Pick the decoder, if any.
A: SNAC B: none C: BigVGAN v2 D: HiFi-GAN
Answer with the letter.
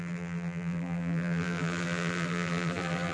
C